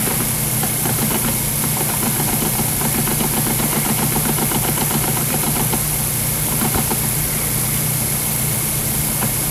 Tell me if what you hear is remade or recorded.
recorded